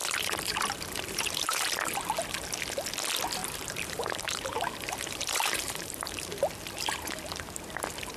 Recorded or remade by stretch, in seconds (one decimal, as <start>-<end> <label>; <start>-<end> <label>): 0.0-1.7 remade; 1.7-3.4 recorded; 3.4-6.4 remade; 6.4-8.2 recorded